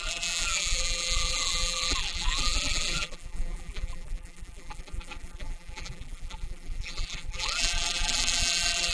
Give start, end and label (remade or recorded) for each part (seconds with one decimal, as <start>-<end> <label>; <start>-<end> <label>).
0.0-8.9 remade